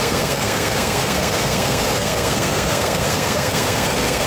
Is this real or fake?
fake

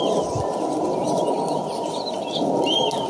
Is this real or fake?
real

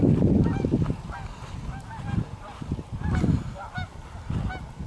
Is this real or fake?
real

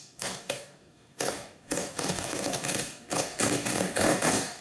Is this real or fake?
fake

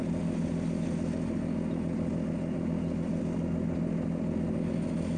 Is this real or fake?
real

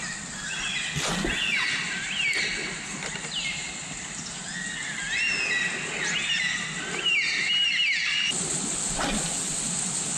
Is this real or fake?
real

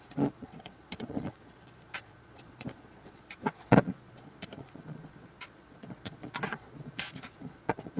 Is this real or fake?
fake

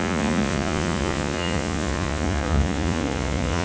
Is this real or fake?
fake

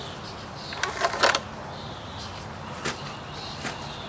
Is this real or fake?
real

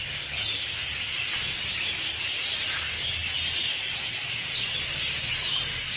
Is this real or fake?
real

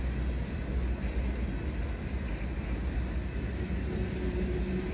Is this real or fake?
real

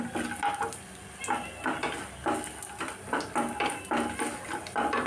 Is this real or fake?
real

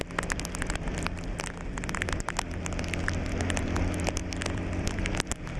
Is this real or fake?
real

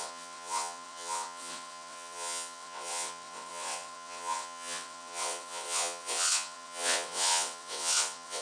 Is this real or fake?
fake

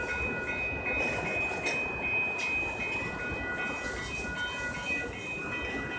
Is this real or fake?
real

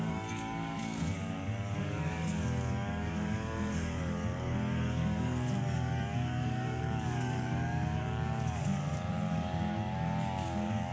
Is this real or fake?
fake